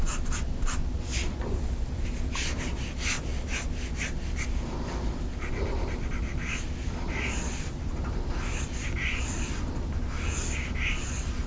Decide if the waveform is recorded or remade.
recorded